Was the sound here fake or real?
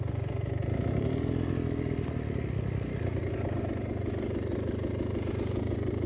real